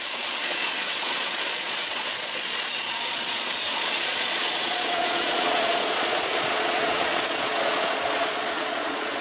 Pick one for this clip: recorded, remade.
remade